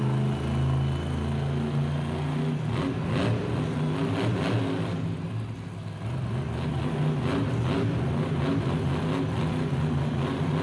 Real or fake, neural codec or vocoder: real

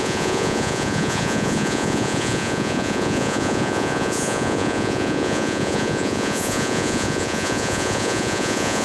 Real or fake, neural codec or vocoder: fake, vocoder, Vocos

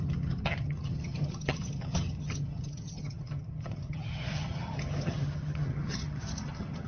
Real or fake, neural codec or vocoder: fake, vocoder, HiFi-GAN